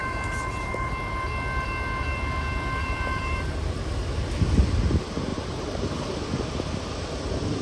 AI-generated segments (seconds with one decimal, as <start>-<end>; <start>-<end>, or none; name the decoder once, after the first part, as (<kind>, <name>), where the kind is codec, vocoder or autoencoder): 0.0-0.7 (vocoder, BigVGAN v2); 2.8-3.5; 5.3-6.0